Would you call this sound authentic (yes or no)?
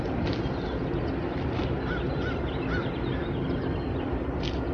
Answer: yes